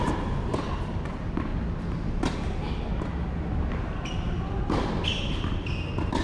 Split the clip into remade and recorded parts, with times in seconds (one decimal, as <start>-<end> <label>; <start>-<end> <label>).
0.0-6.2 recorded